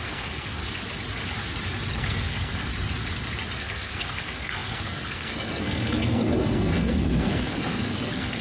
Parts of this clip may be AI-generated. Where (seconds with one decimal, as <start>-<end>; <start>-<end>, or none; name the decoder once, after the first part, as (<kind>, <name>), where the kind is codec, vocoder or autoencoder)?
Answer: 0.0-0.6 (codec, SNAC); 1.9-2.7; 3.6-8.4